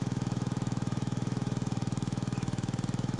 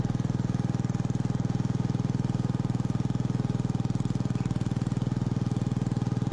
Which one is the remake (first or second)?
first